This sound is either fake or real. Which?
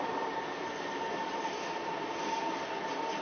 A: real